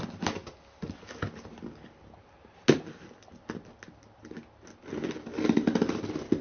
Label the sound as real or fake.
real